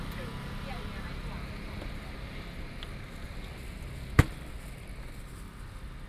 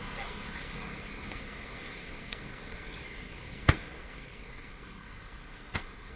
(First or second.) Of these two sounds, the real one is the first